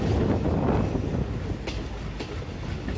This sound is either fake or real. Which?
real